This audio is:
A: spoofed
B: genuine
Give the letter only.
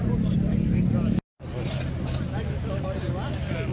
B